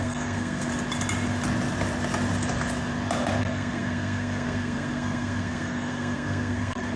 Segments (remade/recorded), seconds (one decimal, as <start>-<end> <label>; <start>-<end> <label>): 0.0-0.7 remade; 0.7-3.4 recorded; 3.4-7.0 remade